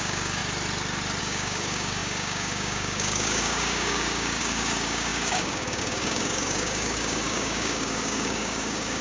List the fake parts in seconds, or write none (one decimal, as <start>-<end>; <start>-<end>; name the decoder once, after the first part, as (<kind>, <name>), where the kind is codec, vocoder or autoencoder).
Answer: 0.0-0.4 (codec, DAC); 1.2-9.0